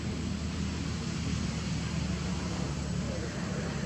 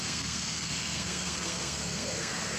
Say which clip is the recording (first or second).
first